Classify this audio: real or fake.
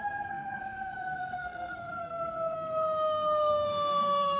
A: fake